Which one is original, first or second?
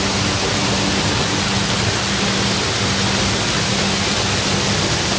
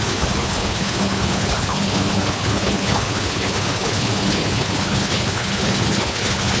first